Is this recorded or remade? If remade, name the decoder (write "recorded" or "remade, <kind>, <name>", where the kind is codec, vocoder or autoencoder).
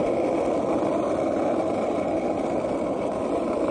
remade, vocoder, BigVGAN v2